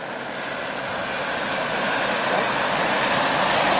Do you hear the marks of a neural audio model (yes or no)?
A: no